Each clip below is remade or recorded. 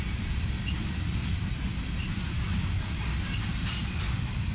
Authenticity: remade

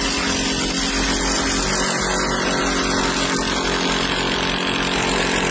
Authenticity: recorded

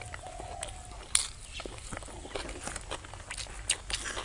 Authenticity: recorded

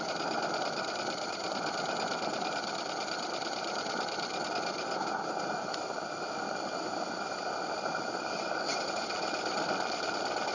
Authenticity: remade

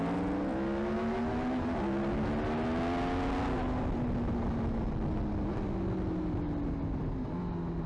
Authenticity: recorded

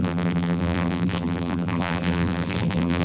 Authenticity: remade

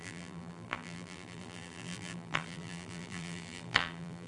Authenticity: remade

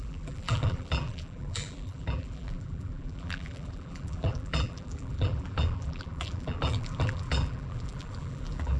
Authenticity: remade